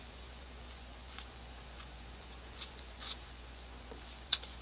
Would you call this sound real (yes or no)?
no